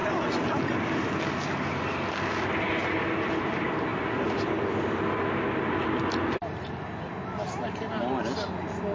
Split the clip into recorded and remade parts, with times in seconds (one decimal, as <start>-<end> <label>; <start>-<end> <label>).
0.0-8.9 recorded